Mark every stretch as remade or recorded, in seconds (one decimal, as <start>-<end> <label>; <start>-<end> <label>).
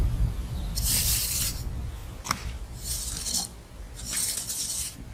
0.0-0.4 recorded; 0.4-1.4 remade; 1.4-2.0 recorded; 2.0-3.1 remade; 3.1-5.1 recorded